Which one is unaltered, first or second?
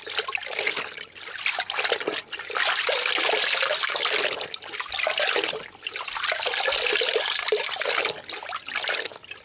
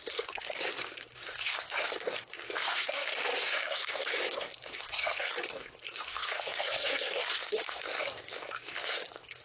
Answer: first